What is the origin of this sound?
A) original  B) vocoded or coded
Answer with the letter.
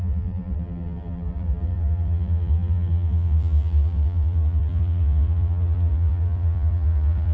B